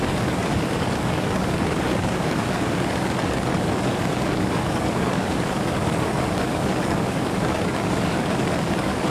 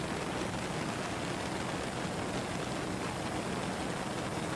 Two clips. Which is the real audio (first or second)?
second